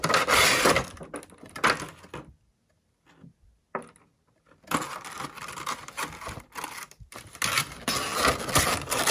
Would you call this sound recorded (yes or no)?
yes